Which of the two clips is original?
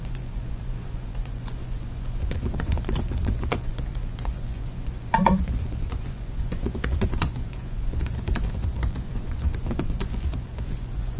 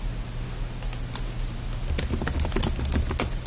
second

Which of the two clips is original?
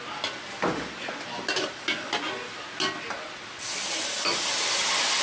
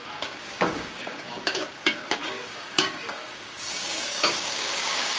first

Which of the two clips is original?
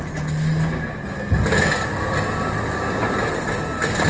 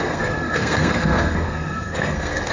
first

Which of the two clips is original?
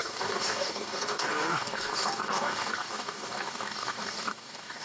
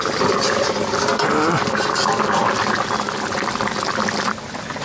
second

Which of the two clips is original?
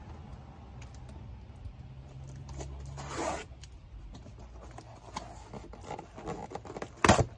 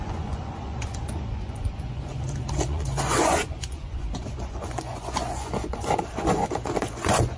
first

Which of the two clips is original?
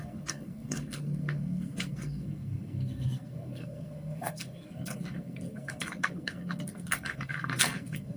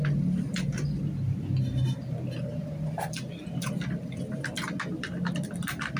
second